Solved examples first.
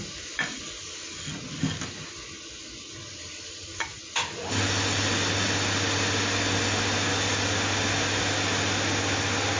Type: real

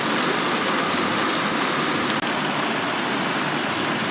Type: real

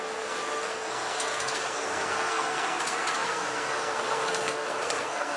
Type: fake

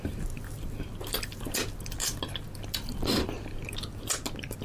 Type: real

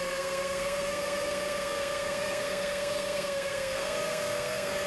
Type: fake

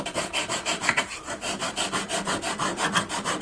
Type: real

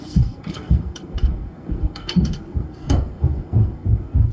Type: fake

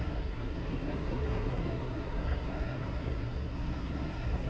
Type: fake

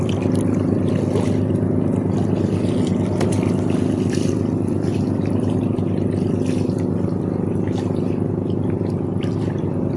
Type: real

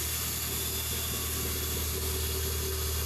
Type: real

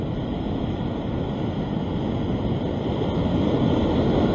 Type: real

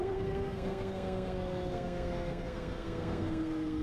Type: fake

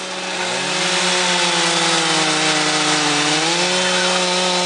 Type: real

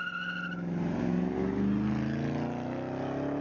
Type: real